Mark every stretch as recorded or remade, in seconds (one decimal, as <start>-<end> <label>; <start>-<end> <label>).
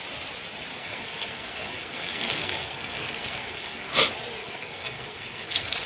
0.0-0.7 recorded; 0.7-4.0 remade; 4.0-4.4 recorded; 4.4-5.9 remade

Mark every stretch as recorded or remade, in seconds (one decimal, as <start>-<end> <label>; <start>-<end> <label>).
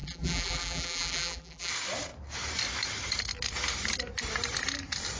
0.0-1.7 remade; 1.7-5.2 recorded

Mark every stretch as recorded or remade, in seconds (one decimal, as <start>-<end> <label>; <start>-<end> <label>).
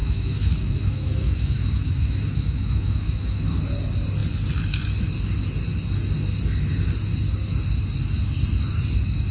0.0-3.6 remade; 3.6-9.3 recorded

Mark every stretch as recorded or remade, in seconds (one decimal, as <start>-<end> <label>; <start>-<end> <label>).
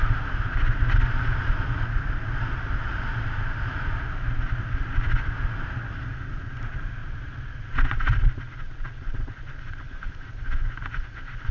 0.0-7.0 recorded; 7.0-10.0 remade; 10.0-11.5 recorded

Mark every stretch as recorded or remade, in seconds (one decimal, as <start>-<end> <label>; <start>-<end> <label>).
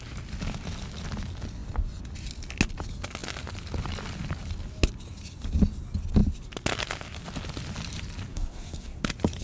0.0-8.3 recorded; 8.3-9.0 remade; 9.0-9.4 recorded